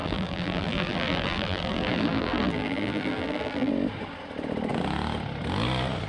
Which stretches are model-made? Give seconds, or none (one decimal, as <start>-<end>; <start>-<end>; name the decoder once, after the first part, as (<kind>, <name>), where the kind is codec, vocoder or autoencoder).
0.0-3.7 (vocoder, BigVGAN v2)